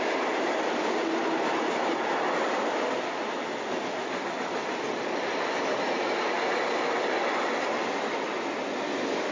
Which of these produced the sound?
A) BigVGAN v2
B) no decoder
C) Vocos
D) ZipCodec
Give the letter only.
B